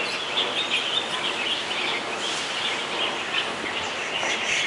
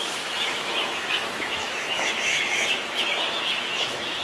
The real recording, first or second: first